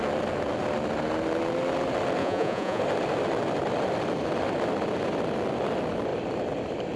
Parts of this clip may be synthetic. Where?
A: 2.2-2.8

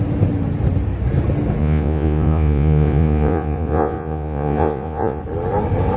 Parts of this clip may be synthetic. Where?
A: 1.6-5.2